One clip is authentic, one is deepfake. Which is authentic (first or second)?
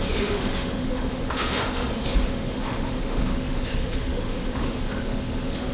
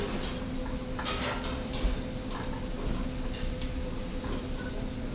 second